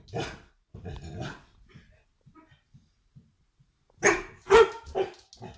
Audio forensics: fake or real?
real